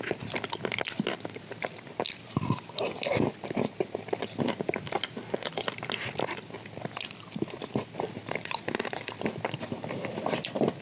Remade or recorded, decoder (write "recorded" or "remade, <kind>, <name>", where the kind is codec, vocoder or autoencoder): recorded